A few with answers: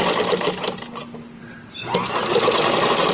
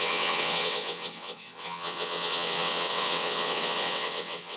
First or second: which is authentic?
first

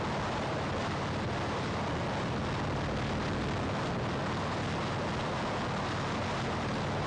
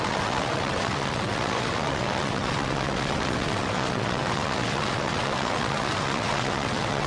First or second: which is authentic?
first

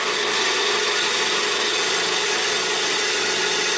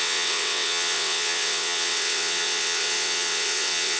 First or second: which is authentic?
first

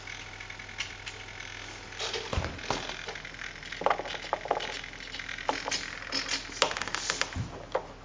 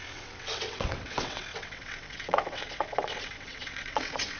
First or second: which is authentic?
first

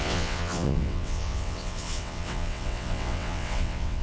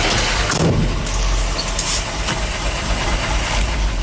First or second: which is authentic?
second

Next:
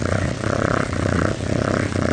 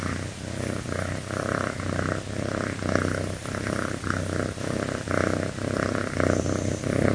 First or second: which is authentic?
second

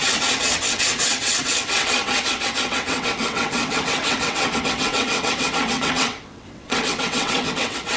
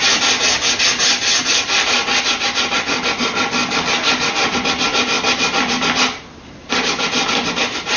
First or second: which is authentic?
second